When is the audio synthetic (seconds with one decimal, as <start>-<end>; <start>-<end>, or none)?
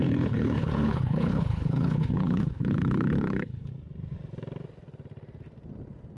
0.0-3.7